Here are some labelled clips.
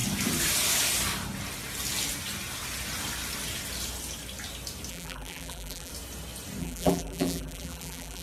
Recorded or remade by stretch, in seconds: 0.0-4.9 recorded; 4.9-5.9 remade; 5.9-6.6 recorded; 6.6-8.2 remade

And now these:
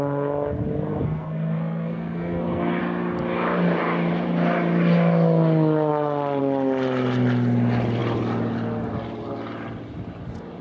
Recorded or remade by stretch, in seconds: 0.0-0.9 recorded; 0.9-2.8 remade; 2.8-10.6 recorded

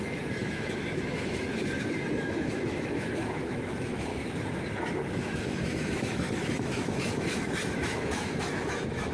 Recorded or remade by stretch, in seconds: 0.0-4.1 remade; 4.1-4.8 recorded; 4.8-9.1 remade

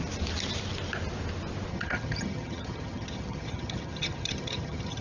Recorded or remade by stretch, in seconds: 0.0-1.7 recorded; 1.7-5.0 remade

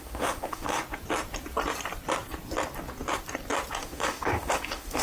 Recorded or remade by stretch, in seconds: 0.0-0.8 remade; 0.8-3.8 recorded; 3.8-5.0 remade